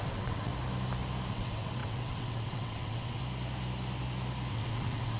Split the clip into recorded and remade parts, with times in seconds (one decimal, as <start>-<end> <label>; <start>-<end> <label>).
0.0-0.5 remade; 0.5-1.3 recorded; 1.3-3.2 remade; 3.2-4.5 recorded; 4.5-5.2 remade